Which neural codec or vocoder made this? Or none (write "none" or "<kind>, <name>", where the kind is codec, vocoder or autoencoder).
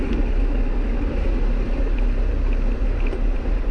none